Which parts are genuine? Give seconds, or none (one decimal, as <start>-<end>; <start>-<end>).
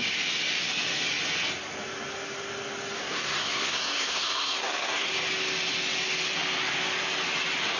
0.0-3.0; 5.1-7.8